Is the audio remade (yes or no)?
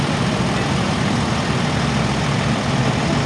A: yes